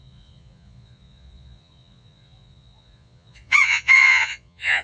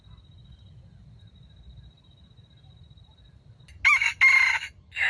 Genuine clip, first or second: second